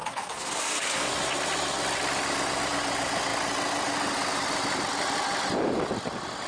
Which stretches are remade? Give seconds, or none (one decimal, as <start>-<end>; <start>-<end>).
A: 0.0-1.1